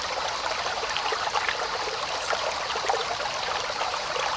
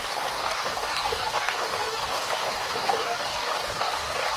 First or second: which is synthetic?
second